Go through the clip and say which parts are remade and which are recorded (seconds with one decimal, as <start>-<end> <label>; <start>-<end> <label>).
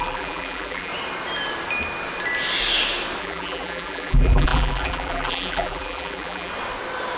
0.0-0.9 remade; 0.9-3.2 recorded; 3.2-6.5 remade; 6.5-7.2 recorded